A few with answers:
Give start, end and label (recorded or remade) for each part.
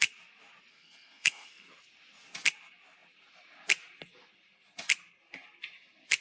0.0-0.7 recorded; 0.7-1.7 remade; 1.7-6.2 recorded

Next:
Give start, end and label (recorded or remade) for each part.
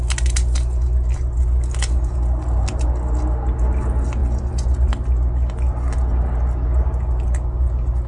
0.0-8.1 recorded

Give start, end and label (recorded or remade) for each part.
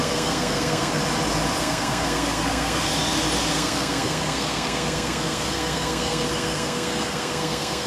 0.0-1.0 remade; 1.0-1.6 recorded; 1.6-2.9 remade; 2.9-3.5 recorded; 3.5-7.9 remade